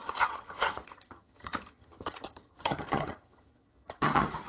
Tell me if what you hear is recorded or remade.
remade